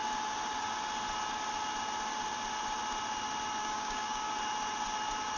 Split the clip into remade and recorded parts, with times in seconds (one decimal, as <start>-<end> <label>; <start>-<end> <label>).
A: 0.0-3.6 recorded; 3.6-4.3 remade; 4.3-5.4 recorded